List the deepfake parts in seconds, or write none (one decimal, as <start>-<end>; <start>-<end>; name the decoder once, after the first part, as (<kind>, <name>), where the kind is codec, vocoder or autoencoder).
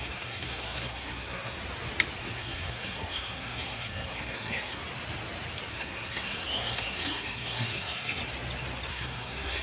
0.0-1.6 (codec, SNAC); 2.2-4.8; 5.7-8.2; 8.9-9.6